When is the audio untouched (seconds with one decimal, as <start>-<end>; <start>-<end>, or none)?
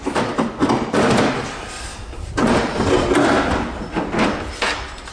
0.0-5.1